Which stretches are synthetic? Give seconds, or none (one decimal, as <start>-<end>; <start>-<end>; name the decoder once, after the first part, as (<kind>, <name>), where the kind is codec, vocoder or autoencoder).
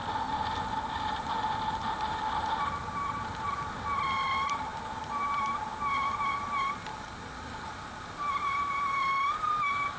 4.7-5.7 (vocoder, BigVGAN v2); 6.9-7.5